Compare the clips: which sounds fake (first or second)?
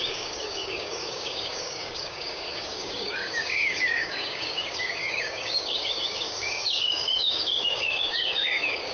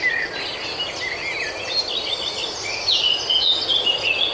first